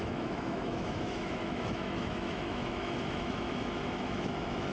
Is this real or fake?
fake